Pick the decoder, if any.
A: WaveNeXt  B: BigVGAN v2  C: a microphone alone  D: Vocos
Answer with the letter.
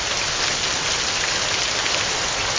C